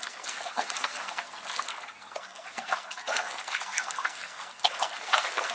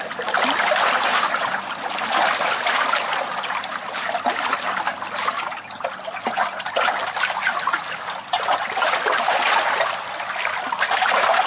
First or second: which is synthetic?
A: first